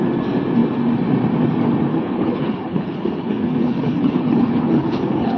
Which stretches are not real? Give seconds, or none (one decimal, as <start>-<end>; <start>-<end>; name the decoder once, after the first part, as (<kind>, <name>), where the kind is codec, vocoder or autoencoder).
1.9-5.4 (codec, HILCodec)